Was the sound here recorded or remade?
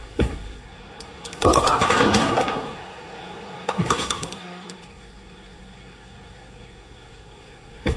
remade